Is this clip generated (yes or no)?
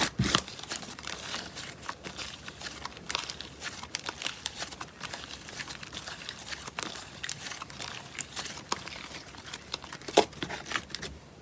yes